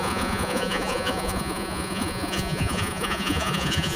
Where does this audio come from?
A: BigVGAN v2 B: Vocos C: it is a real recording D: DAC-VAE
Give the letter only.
B